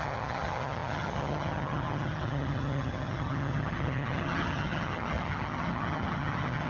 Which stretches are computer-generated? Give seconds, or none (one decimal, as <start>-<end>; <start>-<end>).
0.0-6.7